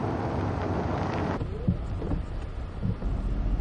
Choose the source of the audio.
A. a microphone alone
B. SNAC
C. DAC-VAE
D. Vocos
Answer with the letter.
A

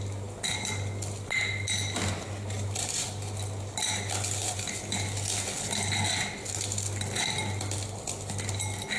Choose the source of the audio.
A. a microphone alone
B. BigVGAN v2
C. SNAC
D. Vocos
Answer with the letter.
A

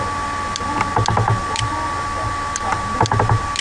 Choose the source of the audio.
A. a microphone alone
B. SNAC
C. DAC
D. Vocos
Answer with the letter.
A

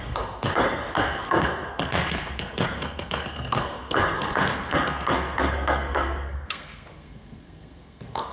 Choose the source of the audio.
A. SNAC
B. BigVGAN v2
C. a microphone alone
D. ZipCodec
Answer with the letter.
A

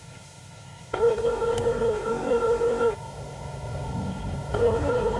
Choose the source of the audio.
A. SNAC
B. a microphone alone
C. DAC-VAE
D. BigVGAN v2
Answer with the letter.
A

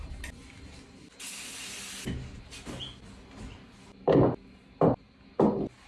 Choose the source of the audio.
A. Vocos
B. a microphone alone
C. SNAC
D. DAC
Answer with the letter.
B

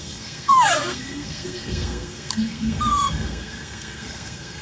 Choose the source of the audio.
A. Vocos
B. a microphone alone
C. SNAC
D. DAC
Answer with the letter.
C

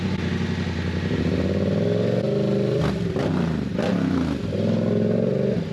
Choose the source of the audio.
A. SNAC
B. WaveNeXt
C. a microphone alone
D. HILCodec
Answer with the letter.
C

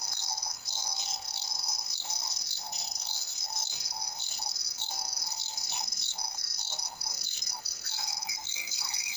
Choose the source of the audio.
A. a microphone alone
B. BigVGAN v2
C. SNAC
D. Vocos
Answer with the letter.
C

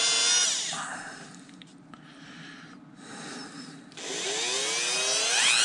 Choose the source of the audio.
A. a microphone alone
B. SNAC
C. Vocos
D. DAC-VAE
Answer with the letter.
A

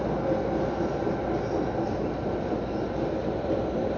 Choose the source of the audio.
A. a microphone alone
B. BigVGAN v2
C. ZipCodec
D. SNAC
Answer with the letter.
A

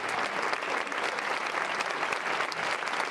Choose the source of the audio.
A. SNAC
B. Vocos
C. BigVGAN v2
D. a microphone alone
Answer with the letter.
D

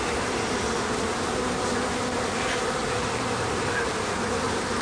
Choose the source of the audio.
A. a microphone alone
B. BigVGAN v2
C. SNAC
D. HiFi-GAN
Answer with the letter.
A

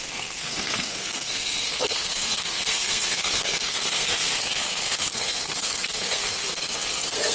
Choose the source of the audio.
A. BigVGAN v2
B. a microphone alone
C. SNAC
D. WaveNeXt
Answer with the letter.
C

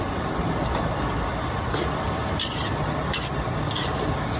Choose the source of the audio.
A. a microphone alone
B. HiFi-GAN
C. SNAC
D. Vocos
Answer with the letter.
A